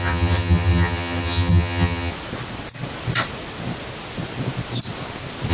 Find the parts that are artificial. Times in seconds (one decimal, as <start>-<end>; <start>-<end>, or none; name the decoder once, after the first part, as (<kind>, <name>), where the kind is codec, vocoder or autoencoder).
0.0-2.1 (vocoder, HiFi-GAN)